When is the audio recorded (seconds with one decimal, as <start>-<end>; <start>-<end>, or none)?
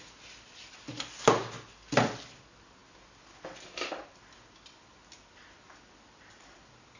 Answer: 0.0-7.0